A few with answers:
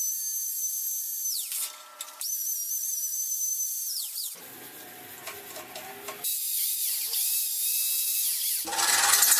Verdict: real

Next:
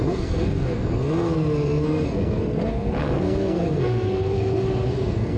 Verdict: fake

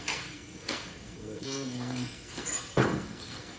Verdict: fake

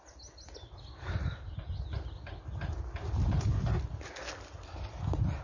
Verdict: real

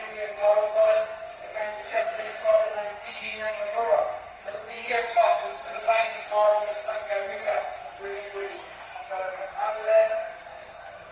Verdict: fake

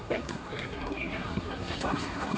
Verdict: fake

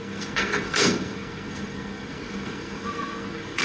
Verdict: fake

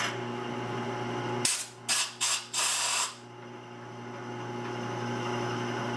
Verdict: real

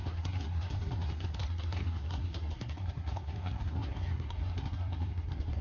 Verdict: fake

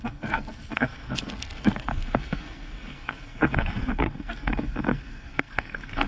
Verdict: fake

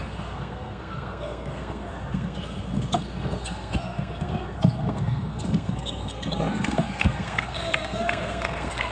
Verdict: fake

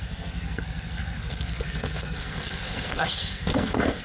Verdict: fake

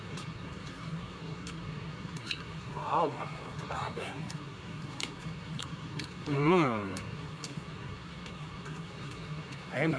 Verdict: fake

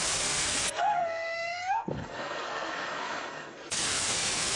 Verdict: fake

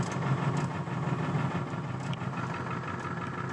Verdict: real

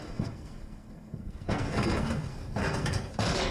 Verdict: fake